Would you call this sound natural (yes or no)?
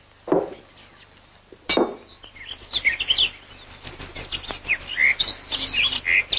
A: yes